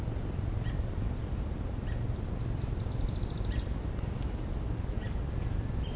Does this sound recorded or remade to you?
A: recorded